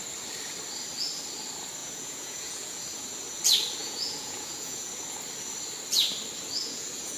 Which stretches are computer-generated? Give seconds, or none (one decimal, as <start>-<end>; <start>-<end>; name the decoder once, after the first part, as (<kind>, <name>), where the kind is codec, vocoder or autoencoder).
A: 1.8-2.8 (vocoder, Vocos); 3.8-4.9; 6.6-7.2